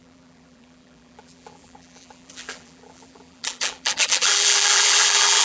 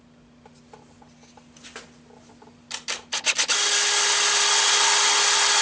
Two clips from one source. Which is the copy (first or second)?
first